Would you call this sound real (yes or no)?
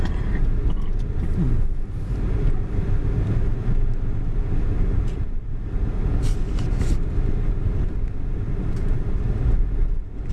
yes